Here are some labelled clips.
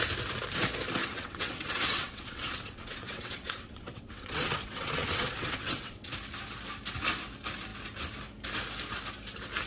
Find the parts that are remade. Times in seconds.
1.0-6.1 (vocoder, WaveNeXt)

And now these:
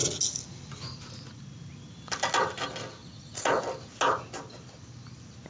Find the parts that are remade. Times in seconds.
3.0-3.6 (vocoder, Vocos)

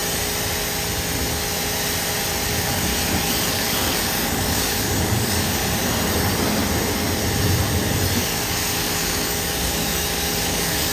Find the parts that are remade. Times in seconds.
2.5-2.9 (codec, DAC); 3.5-5.6; 8.2-10.9

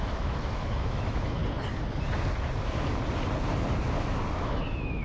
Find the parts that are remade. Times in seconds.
0.0-1.4 (autoencoder, DAC-VAE); 4.4-5.0

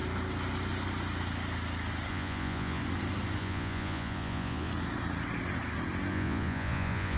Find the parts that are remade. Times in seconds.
2.1-2.8 (vocoder, Vocos); 3.4-4.7; 6.1-7.2